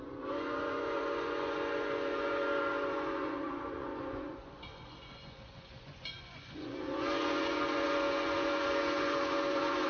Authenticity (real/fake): fake